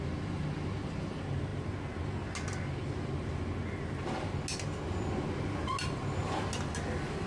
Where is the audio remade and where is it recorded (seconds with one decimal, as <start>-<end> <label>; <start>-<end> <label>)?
0.0-7.3 recorded